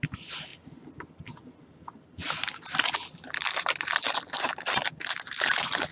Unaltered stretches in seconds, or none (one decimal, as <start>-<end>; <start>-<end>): 0.0-5.9